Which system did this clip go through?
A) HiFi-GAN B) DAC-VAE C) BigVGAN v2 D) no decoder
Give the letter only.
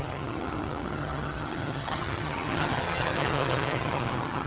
A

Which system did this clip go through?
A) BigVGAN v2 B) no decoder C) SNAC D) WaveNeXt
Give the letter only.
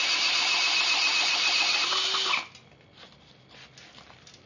B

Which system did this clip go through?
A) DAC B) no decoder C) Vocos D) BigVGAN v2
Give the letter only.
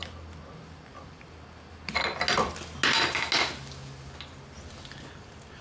B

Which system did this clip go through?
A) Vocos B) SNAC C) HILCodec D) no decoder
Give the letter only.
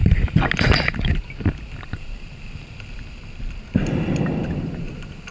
D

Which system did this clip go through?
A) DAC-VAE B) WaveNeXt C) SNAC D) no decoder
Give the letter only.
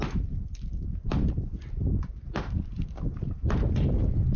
D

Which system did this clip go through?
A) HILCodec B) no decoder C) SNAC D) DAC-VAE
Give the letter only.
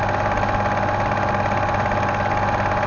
B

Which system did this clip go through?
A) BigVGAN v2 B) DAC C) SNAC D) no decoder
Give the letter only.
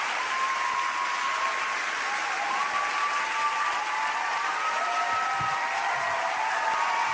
D